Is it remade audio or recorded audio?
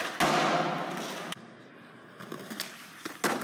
recorded